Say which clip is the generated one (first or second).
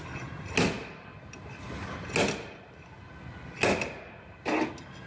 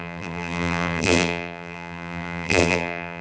second